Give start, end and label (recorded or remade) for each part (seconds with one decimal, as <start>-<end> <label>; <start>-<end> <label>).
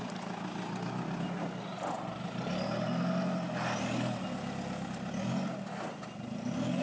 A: 0.0-6.8 recorded